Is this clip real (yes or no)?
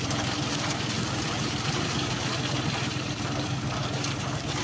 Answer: no